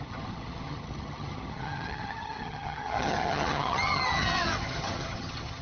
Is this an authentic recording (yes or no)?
no